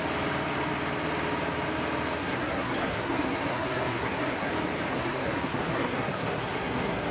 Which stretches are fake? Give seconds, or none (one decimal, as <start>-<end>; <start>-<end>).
2.2-4.5; 4.9-7.1